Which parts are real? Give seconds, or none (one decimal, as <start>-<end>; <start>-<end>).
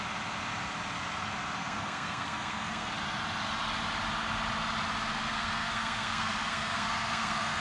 0.0-1.6; 2.9-5.1